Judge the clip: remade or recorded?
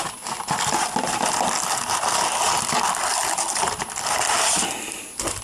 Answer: recorded